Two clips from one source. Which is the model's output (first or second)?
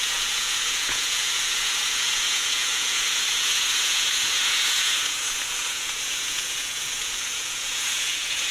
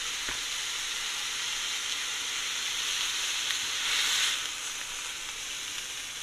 first